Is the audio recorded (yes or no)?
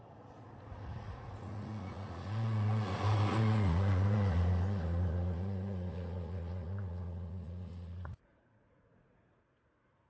no